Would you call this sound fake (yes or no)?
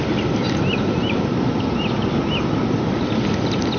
no